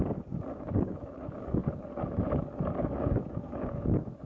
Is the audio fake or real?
fake